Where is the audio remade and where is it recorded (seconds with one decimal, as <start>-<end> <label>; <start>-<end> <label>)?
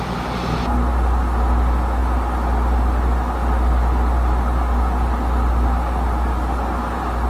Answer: 0.0-7.3 recorded